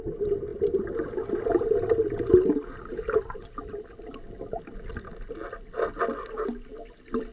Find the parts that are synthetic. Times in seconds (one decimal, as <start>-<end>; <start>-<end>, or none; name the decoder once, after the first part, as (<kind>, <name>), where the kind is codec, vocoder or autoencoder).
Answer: none